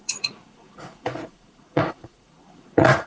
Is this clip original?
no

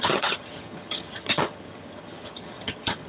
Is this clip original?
no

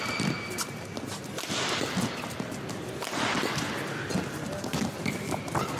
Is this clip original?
yes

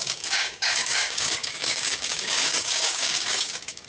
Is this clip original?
no